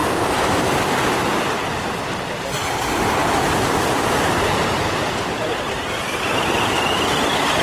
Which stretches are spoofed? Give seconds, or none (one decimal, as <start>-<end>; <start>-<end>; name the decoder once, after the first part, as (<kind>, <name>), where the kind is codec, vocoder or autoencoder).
3.2-6.5 (vocoder, BigVGAN v2)